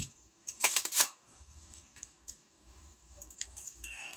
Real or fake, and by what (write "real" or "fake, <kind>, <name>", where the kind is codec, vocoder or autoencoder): fake, codec, DAC